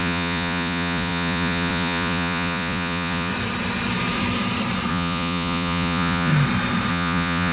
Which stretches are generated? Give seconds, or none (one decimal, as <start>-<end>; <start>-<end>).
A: 0.0-3.3; 4.9-6.3; 6.9-7.5